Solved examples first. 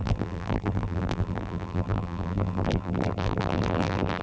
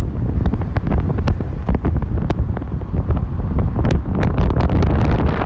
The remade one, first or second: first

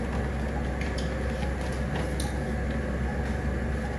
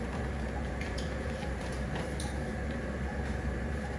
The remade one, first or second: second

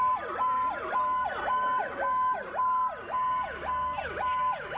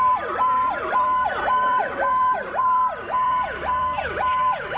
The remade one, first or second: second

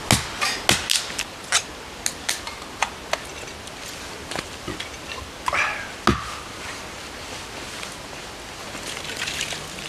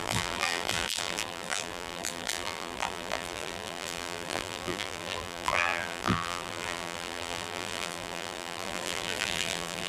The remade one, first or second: second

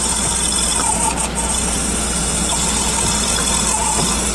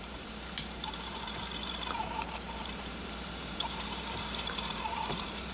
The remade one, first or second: second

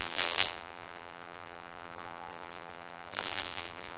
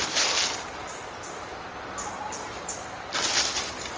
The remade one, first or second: first